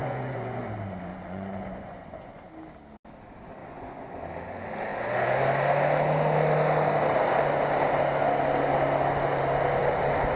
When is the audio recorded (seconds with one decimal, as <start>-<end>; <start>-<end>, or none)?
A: 0.6-1.1; 2.5-3.6; 4.2-10.4